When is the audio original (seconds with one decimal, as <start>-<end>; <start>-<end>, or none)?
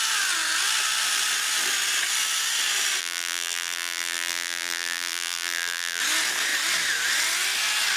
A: 0.0-3.0; 6.0-8.0